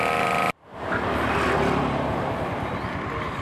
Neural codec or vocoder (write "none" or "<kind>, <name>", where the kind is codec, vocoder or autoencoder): none